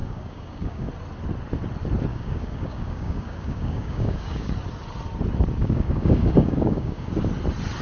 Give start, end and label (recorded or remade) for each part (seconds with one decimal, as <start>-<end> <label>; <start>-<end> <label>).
0.0-0.9 remade; 0.9-2.1 recorded; 2.1-4.5 remade; 4.5-5.6 recorded; 5.6-7.1 remade; 7.1-7.8 recorded